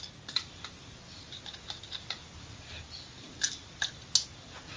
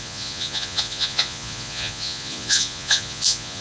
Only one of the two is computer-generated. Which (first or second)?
second